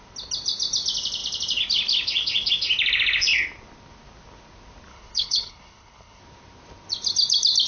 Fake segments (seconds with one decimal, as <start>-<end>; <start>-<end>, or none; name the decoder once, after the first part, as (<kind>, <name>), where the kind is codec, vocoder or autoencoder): 4.9-6.2 (codec, HILCodec)

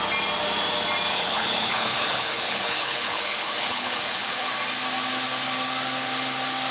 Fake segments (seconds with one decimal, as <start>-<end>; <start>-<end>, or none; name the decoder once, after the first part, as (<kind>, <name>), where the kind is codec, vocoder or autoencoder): 1.1-4.5 (codec, HILCodec)

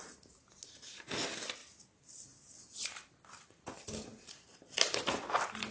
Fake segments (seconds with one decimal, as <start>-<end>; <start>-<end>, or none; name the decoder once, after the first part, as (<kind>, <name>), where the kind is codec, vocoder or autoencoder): none

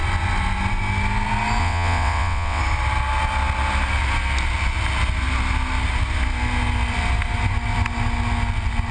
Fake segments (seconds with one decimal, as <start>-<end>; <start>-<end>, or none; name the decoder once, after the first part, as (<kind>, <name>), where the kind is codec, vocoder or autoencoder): 1.6-2.6 (vocoder, WaveNeXt)

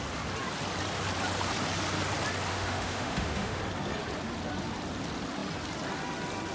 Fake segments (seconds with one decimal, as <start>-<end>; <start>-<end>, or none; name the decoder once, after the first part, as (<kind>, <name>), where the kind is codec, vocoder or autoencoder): 2.5-3.6 (autoencoder, DAC-VAE)